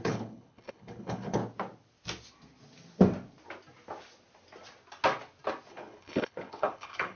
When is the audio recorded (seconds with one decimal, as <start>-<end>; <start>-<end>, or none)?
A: 1.4-5.7